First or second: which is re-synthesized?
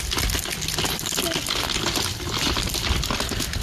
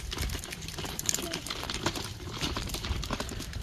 second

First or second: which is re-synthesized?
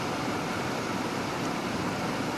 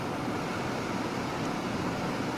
first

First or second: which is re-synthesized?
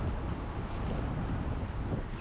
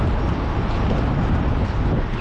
first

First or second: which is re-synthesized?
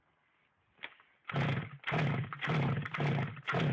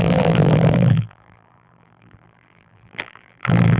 second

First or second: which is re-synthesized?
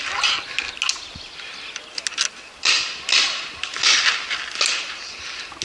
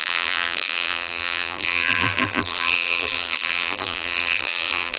second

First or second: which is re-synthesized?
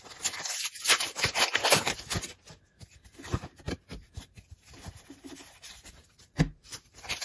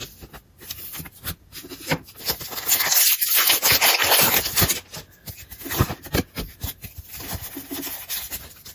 first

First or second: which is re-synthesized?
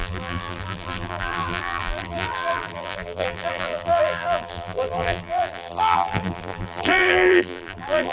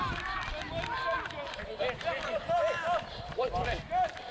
first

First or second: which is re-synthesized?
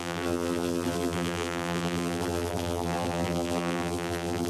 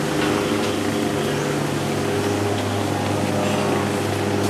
first